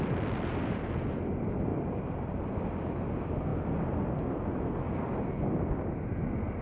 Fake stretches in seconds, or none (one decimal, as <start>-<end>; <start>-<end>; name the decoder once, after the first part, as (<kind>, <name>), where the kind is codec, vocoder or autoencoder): 1.7-3.1 (vocoder, BigVGAN v2)